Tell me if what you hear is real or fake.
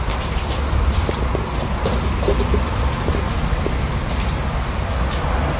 real